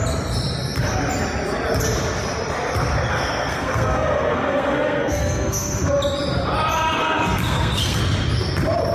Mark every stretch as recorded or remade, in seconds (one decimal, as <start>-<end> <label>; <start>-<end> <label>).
0.0-3.1 recorded; 3.1-5.9 remade; 5.9-7.0 recorded; 7.0-8.0 remade; 8.0-8.9 recorded